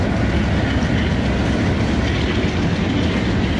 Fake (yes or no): no